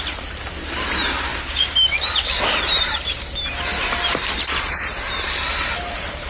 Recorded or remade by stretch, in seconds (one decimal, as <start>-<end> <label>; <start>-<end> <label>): 0.0-6.3 remade